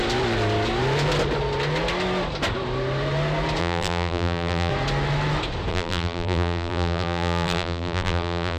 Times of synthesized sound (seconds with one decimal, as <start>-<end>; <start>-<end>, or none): 3.6-4.7; 5.7-8.6